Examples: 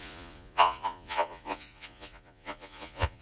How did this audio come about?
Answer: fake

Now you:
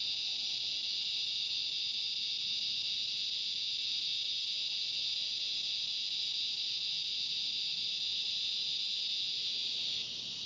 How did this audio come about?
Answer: real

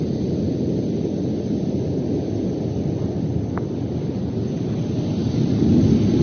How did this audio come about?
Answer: real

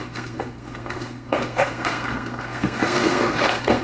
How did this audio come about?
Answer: fake